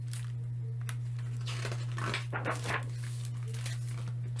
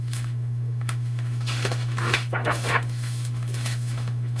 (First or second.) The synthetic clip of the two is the second